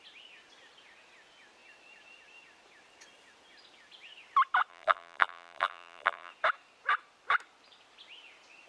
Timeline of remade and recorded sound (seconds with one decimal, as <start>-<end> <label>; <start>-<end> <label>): 0.0-4.7 recorded; 4.7-6.3 remade; 6.3-8.7 recorded